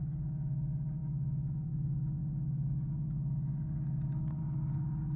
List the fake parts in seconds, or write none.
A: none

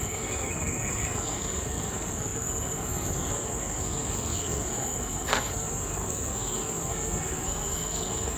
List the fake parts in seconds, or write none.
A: 0.0-8.4 (codec, SNAC)

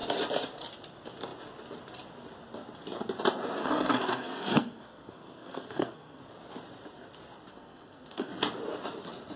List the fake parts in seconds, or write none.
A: 3.6-6.2 (codec, SNAC); 7.5-8.3

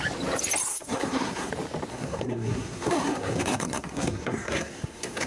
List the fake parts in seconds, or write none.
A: 0.7-1.5 (codec, SNAC); 1.9-5.3